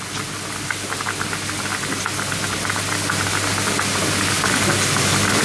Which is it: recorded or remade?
recorded